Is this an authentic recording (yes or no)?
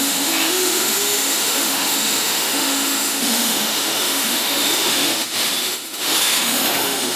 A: no